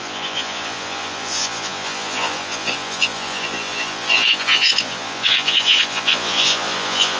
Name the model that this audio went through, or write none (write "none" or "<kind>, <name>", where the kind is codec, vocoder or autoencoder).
vocoder, Vocos